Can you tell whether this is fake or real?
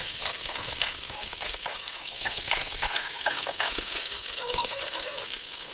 fake